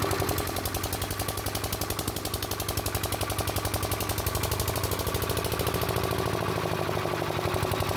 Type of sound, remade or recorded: recorded